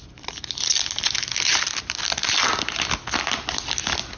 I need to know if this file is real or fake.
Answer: real